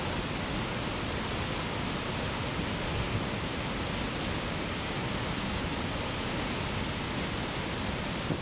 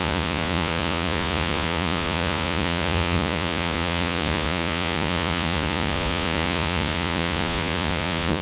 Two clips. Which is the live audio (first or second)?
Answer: first